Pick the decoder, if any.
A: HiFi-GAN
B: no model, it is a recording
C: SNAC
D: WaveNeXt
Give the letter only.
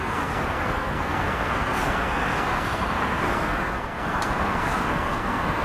C